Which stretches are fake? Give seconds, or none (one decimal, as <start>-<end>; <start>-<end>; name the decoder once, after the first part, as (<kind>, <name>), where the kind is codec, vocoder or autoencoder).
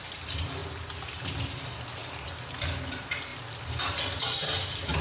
none